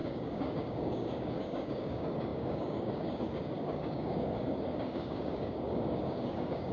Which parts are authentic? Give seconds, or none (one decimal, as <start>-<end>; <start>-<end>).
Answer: none